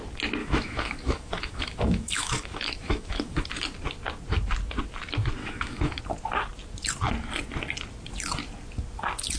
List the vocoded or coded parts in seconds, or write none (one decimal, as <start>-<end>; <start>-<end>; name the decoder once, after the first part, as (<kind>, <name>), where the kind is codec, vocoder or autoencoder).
0.4-3.5 (autoencoder, DAC-VAE); 5.4-6.0